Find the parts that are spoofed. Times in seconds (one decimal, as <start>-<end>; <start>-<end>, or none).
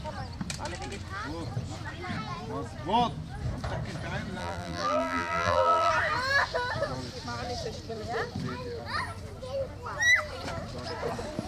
4.4-5.9